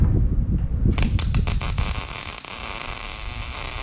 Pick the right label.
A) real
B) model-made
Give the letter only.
A